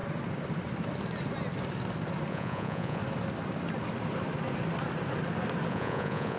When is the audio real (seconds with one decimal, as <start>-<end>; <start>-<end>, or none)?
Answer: 0.0-2.3; 3.0-5.7